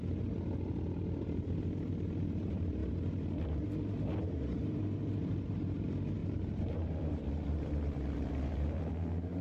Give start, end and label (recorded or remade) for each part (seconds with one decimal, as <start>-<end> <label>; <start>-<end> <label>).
0.0-6.2 recorded; 6.2-8.9 remade; 8.9-9.4 recorded

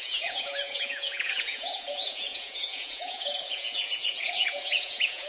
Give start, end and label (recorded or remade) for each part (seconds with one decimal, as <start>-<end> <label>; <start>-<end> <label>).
0.0-5.3 remade

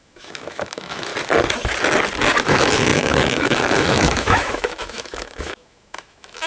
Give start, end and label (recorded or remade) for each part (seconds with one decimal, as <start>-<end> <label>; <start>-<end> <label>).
0.0-1.1 remade; 1.1-2.4 recorded; 2.4-6.5 remade

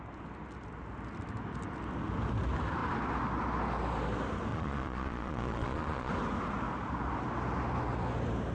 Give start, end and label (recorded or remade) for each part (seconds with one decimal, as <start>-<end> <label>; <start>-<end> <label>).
0.0-4.5 recorded; 4.5-6.1 remade; 6.1-8.5 recorded

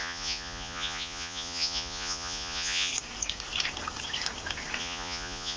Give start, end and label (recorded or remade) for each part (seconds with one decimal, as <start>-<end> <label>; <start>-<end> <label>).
0.0-2.9 remade; 2.9-4.8 recorded; 4.8-5.6 remade

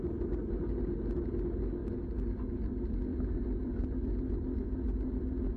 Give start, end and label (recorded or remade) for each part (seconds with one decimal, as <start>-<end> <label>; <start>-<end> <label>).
0.0-3.1 recorded; 3.1-4.3 remade; 4.3-5.6 recorded

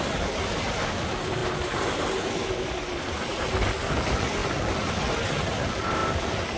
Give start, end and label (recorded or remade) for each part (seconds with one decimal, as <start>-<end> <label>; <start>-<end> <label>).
0.0-6.6 recorded